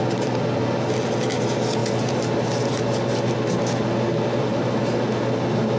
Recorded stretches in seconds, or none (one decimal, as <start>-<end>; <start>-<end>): 0.0-5.8